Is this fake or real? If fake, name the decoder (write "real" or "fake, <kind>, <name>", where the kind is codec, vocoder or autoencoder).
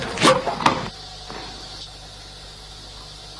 real